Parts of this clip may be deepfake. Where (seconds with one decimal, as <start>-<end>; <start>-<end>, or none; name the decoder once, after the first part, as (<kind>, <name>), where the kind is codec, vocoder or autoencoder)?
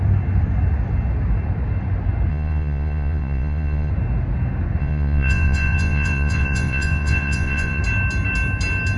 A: 2.3-3.9 (vocoder, Vocos); 4.8-7.8